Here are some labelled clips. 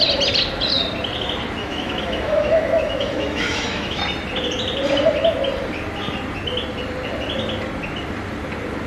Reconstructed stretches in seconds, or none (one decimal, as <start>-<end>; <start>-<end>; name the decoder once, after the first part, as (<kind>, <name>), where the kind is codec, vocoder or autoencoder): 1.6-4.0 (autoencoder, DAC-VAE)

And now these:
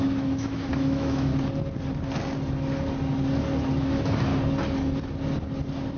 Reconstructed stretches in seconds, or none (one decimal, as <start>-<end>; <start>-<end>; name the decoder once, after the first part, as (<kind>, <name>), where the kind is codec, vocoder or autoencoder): 0.0-1.3 (autoencoder, DAC-VAE); 3.8-4.3

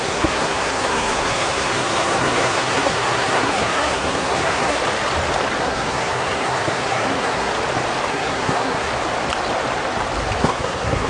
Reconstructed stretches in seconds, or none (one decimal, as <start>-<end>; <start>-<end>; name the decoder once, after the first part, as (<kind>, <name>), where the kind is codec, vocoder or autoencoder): 0.0-4.8 (codec, SNAC); 5.6-7.5; 8.1-8.9; 10.4-11.1

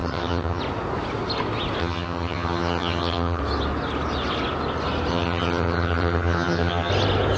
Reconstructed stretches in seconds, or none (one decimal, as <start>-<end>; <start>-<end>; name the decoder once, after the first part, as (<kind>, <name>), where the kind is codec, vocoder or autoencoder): 0.0-0.6 (vocoder, HiFi-GAN); 1.8-3.4; 5.1-6.9

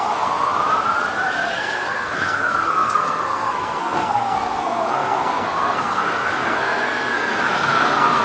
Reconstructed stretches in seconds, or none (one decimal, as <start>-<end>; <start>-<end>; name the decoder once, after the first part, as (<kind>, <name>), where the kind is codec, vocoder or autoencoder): 0.0-0.5 (codec, SNAC); 1.5-8.2